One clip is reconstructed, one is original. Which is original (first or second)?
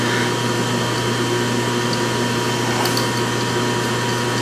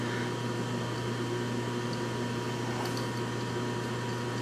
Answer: first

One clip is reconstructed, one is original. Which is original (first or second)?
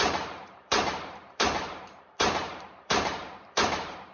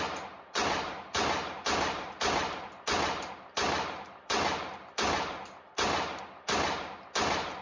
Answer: second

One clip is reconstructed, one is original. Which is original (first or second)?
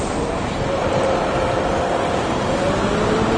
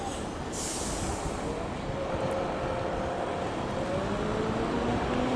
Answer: second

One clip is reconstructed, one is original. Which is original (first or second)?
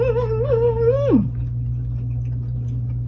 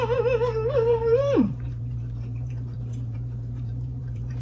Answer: first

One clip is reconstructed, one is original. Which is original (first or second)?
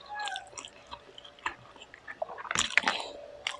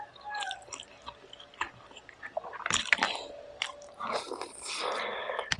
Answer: first